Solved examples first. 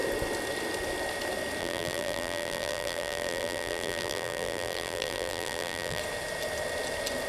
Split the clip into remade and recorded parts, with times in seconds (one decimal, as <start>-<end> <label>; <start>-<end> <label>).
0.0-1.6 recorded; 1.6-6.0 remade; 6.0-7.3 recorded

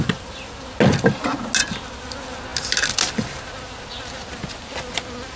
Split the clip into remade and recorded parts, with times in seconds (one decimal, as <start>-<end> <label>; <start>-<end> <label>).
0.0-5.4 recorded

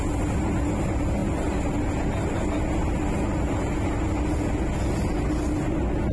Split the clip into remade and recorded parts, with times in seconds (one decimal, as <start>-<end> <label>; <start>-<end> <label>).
0.0-6.1 recorded

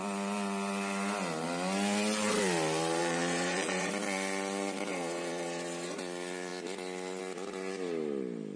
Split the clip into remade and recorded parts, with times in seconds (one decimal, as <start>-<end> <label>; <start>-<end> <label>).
0.0-3.0 recorded; 3.0-3.9 remade; 3.9-4.9 recorded; 4.9-6.0 remade; 6.0-8.6 recorded

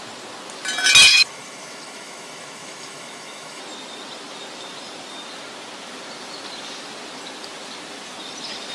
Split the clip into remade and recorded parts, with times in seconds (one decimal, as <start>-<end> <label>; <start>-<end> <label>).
0.0-1.1 recorded; 1.1-3.6 remade; 3.6-8.7 recorded